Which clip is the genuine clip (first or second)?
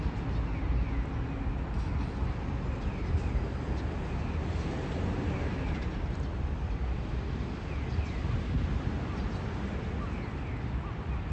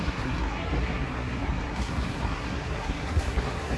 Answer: first